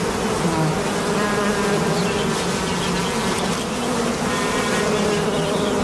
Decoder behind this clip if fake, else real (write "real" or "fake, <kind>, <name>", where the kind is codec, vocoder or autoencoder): real